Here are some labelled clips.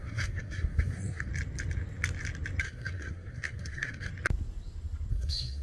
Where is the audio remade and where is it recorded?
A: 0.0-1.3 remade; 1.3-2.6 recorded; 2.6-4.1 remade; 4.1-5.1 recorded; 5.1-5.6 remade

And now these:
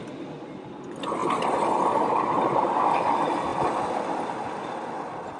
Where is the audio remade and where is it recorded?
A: 0.0-5.4 recorded

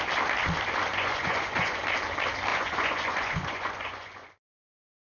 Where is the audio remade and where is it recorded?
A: 0.0-0.9 recorded; 0.9-1.8 remade; 1.8-2.5 recorded; 2.5-5.1 remade

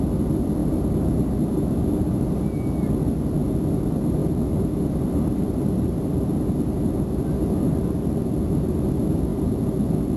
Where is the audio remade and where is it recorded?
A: 0.0-0.6 recorded; 0.6-2.5 remade; 2.5-4.2 recorded; 4.2-6.4 remade; 6.4-10.2 recorded

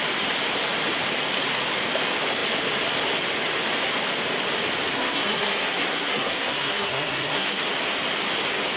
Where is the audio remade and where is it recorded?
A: 0.0-4.9 recorded; 4.9-7.6 remade; 7.6-8.8 recorded

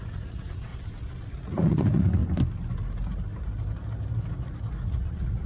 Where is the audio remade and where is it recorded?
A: 0.0-0.7 remade; 0.7-1.3 recorded; 1.3-2.2 remade; 2.2-4.9 recorded; 4.9-5.5 remade

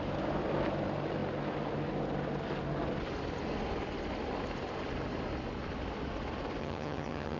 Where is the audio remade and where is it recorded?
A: 0.0-6.6 recorded; 6.6-7.4 remade